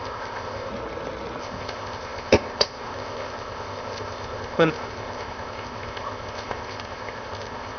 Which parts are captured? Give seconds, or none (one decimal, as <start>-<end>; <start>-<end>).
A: 0.7-1.4